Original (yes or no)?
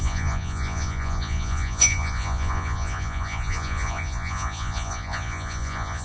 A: no